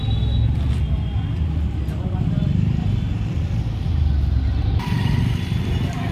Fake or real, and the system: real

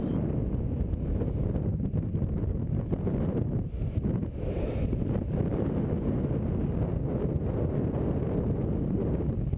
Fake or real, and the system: real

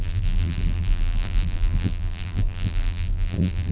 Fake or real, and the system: fake, vocoder, BigVGAN v2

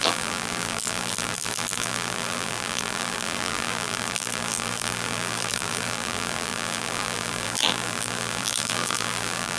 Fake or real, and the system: fake, vocoder, BigVGAN v2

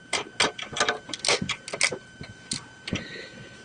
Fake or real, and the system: real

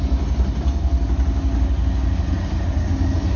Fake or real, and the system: real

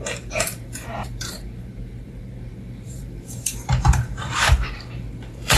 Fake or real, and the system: fake, vocoder, BigVGAN v2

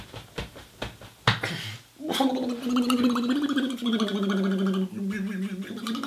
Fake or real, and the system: real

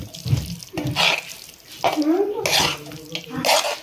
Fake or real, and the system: real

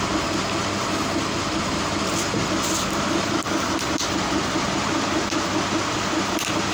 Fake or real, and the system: real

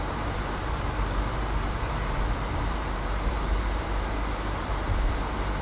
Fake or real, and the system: fake, vocoder, BigVGAN v2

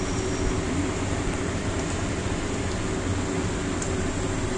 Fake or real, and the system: real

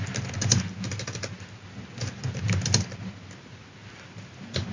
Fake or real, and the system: real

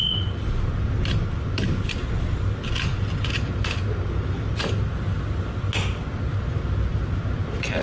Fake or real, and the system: real